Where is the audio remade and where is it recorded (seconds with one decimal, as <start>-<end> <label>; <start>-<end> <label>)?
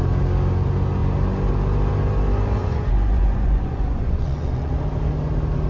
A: 0.0-2.6 recorded; 2.6-4.7 remade; 4.7-5.7 recorded